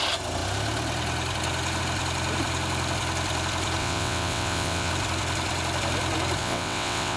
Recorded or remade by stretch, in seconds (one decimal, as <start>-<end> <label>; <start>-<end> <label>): 0.0-3.8 recorded; 3.8-4.9 remade; 4.9-6.4 recorded; 6.4-7.2 remade